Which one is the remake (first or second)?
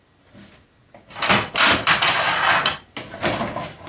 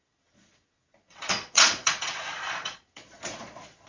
second